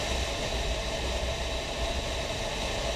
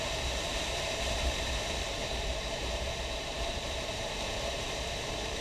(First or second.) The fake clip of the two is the second